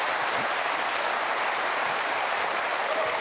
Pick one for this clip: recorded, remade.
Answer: remade